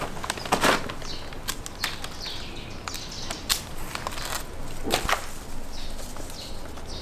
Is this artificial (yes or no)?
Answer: no